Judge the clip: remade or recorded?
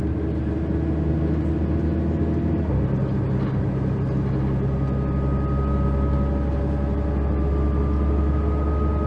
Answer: recorded